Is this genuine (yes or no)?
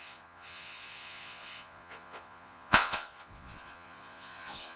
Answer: no